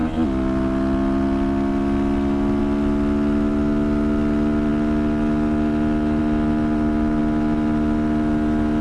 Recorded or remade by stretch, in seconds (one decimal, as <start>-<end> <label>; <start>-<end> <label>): 0.0-8.8 recorded